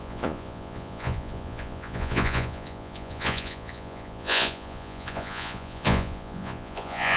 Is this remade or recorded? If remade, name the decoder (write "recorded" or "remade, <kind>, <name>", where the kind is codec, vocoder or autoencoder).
remade, vocoder, Vocos